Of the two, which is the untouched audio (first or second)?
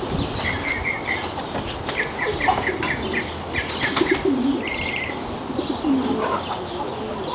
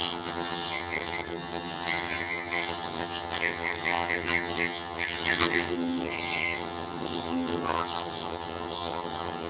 first